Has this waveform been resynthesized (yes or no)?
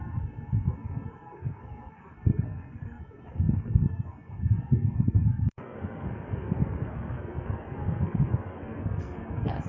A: yes